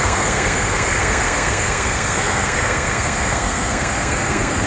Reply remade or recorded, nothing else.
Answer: remade